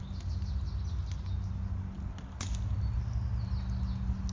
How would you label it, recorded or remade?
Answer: recorded